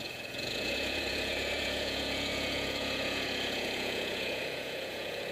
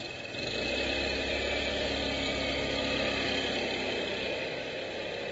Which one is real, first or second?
second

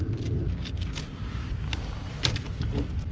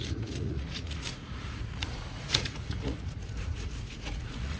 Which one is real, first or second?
first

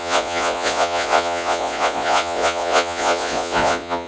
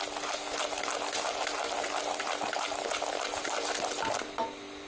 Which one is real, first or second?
second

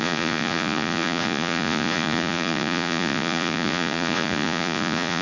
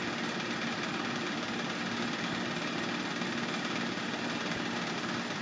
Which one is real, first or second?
second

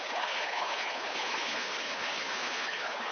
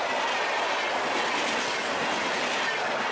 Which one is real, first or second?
second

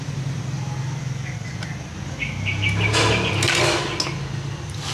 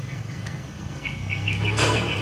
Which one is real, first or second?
first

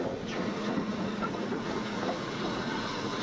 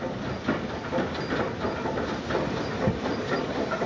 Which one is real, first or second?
second